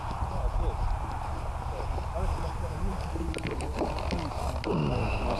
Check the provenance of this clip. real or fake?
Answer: real